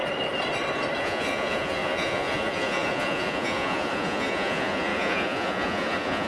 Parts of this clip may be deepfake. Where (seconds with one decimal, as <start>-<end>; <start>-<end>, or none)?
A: 1.0-6.3